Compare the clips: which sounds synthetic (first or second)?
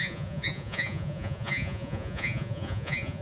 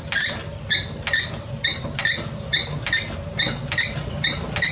first